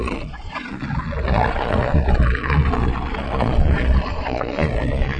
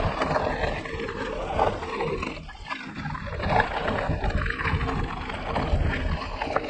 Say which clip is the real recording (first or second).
second